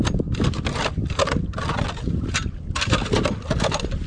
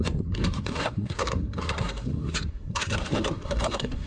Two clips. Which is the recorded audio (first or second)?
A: first